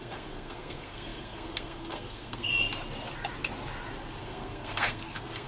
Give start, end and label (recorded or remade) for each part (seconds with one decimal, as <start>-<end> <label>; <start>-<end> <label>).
0.0-2.5 remade; 2.5-4.2 recorded; 4.2-5.5 remade